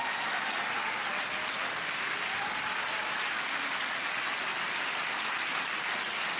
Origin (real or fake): real